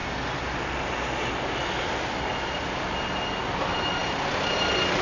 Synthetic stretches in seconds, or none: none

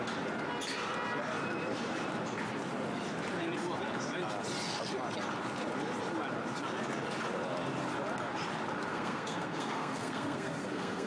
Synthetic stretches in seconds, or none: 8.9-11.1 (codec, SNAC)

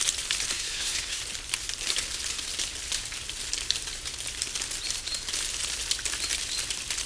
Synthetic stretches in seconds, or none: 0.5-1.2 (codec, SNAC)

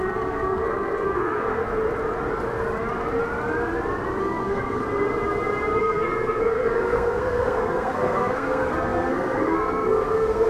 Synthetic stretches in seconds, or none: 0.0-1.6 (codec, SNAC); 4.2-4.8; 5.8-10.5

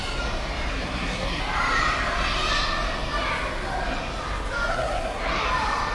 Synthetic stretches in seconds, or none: 0.7-1.4 (codec, SNAC); 4.7-5.4

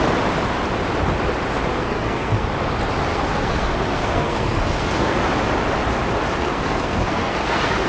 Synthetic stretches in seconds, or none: 1.7-2.5 (codec, SNAC); 3.1-5.2; 6.4-7.9

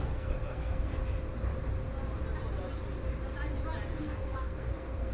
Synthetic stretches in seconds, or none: 0.0-0.9 (codec, SNAC); 4.0-5.1

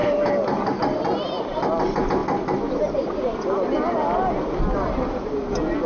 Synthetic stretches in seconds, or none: none